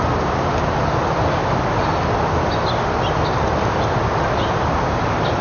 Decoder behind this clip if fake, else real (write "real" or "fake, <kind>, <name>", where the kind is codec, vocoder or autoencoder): real